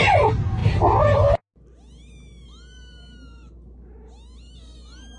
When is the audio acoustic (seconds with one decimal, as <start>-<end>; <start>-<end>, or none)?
0.0-5.2